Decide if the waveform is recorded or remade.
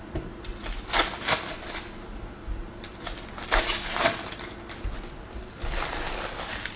recorded